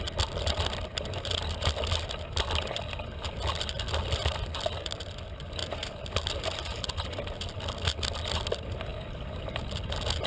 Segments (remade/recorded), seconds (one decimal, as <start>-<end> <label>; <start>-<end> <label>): 0.0-8.9 recorded; 8.9-9.6 remade; 9.6-10.3 recorded